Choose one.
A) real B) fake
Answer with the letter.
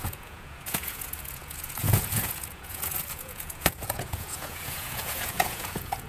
B